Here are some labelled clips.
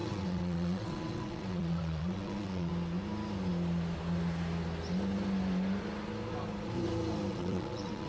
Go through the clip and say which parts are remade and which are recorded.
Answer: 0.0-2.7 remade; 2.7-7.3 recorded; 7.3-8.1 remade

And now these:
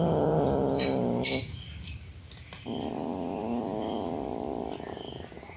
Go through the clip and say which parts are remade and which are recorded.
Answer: 0.0-5.6 recorded

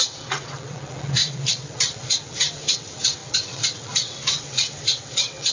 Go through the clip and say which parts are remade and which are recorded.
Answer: 0.0-5.5 remade